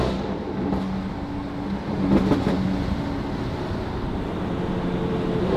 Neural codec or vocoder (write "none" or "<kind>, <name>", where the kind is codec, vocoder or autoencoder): none